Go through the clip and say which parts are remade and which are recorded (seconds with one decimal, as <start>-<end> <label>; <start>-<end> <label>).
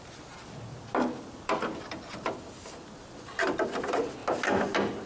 0.0-0.7 recorded; 0.7-3.2 remade; 3.2-5.1 recorded